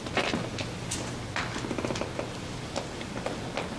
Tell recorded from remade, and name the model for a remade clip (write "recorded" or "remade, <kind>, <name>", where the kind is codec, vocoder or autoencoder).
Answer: recorded